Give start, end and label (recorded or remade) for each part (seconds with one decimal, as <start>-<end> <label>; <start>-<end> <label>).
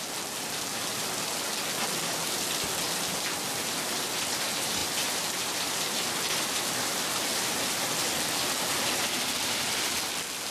0.0-10.5 recorded